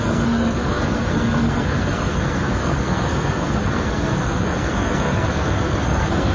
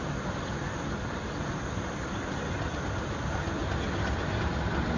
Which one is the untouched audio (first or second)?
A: second